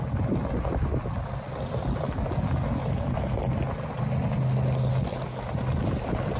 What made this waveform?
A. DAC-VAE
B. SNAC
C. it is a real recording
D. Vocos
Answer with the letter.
C